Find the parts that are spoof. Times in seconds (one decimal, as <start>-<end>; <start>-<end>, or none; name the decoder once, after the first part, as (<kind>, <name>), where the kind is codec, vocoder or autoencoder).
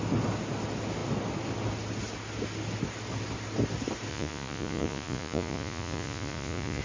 4.1-6.8 (vocoder, Vocos)